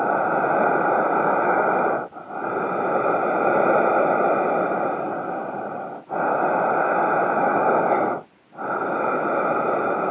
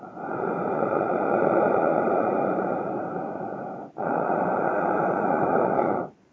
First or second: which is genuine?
first